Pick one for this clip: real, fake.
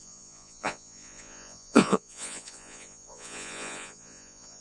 fake